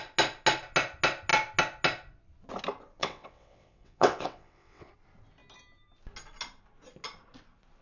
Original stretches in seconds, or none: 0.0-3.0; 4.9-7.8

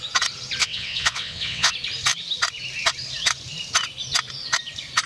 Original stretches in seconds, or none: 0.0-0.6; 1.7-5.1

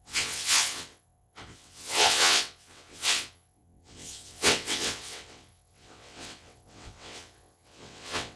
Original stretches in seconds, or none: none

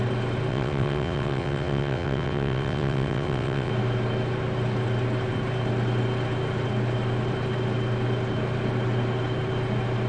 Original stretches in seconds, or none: 0.0-0.5; 3.7-10.1